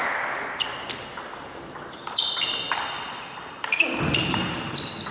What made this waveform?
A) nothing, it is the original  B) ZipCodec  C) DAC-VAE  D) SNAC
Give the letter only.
A